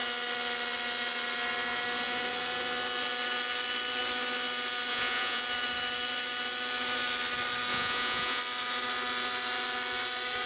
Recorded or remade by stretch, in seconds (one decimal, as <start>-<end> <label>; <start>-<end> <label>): 0.0-4.9 recorded; 4.9-5.4 remade; 5.4-7.7 recorded; 7.7-8.4 remade; 8.4-10.5 recorded